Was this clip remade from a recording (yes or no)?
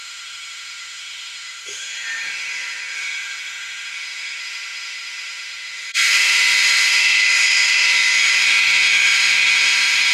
yes